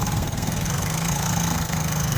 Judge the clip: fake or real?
fake